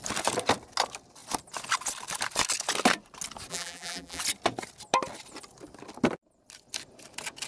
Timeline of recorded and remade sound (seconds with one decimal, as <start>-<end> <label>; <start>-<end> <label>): 0.0-3.5 recorded; 3.5-4.2 remade; 4.2-7.5 recorded